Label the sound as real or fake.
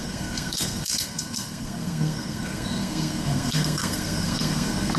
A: fake